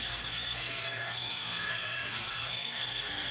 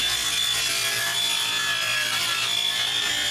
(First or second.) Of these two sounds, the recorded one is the second